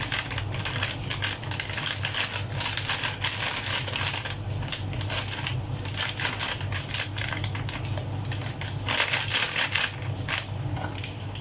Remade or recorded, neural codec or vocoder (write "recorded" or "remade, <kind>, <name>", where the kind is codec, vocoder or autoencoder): recorded